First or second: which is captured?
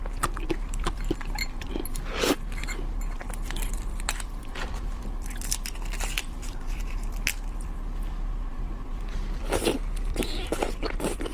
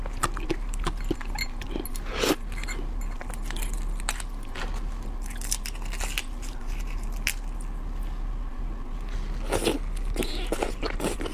second